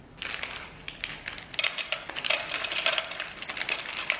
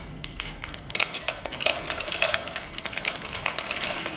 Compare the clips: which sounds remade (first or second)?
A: second